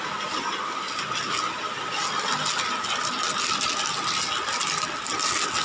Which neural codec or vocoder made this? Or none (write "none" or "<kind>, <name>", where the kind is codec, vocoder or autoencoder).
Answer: none